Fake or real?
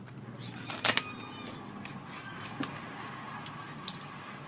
real